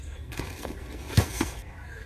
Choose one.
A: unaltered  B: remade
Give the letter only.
B